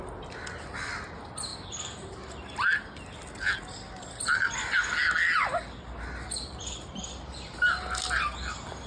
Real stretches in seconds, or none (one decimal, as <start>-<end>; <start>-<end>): 0.0-8.9